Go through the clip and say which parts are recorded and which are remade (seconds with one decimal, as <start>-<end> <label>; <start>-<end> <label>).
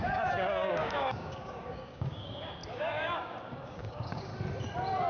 0.0-4.3 remade; 4.3-5.1 recorded